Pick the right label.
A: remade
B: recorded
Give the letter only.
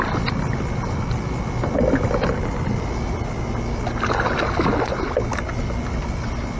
B